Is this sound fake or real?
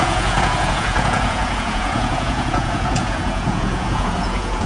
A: fake